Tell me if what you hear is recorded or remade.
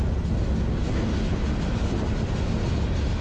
recorded